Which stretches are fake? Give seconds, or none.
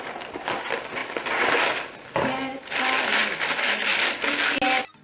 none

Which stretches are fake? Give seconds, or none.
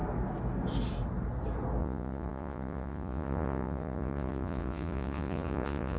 1.8-6.0 (vocoder, Vocos)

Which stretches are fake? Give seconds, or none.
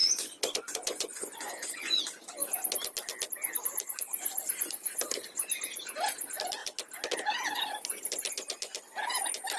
0.0-2.0 (vocoder, Vocos)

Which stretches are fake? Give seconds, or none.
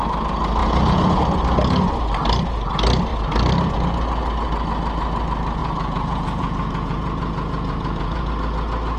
0.6-1.2 (vocoder, Vocos); 5.6-8.3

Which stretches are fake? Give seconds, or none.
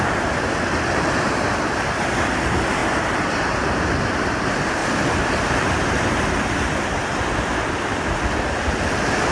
none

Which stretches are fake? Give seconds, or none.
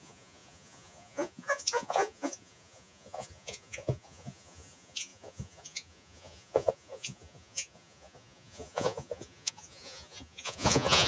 0.0-11.1 (vocoder, Vocos)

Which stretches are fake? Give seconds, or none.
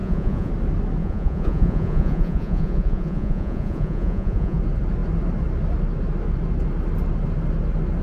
0.0-0.5 (vocoder, Vocos); 1.0-4.6